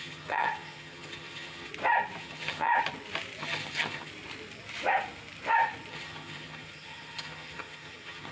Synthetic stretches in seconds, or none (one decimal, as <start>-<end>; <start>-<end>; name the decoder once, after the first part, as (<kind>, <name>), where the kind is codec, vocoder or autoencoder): 0.0-1.7 (vocoder, HiFi-GAN); 2.2-2.7; 3.4-4.1; 5.9-8.3